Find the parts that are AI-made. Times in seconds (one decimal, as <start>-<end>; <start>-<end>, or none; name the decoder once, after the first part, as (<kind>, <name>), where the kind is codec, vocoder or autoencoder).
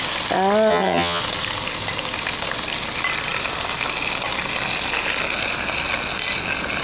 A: 0.7-1.2 (vocoder, HiFi-GAN)